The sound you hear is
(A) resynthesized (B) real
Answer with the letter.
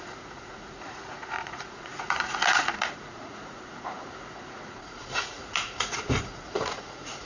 A